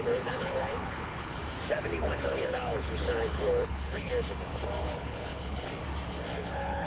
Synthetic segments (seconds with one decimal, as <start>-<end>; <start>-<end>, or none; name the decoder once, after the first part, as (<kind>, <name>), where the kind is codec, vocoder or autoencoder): 0.0-1.4 (codec, HILCodec); 2.0-4.1; 4.8-5.7; 6.4-6.9